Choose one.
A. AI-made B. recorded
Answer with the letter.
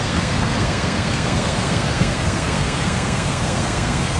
A